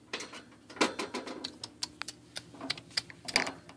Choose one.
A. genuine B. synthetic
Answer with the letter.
A